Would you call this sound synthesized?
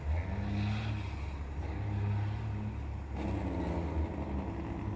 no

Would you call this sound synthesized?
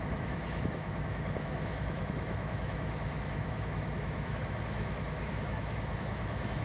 yes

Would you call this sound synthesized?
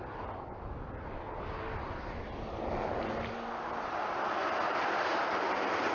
no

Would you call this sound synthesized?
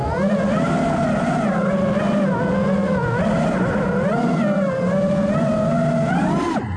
no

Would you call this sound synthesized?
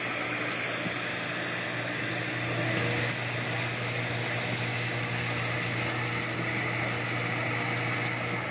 no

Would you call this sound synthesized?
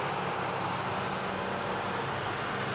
no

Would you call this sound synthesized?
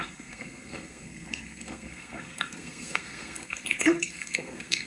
yes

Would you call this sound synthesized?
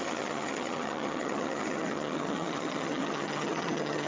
yes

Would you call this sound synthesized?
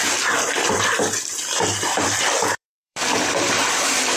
yes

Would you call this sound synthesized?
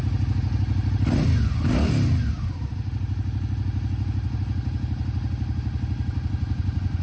no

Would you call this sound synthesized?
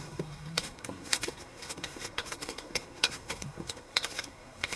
yes